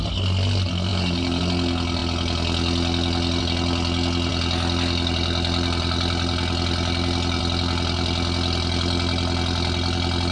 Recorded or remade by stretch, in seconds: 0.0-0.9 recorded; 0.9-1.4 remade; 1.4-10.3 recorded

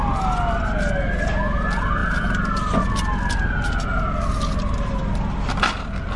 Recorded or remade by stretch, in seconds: 0.0-6.2 recorded